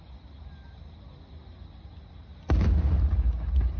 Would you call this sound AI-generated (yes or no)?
no